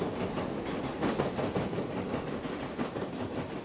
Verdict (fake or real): real